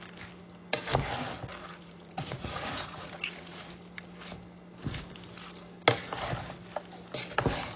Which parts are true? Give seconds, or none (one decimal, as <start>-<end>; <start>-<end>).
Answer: 0.0-1.6; 3.7-7.8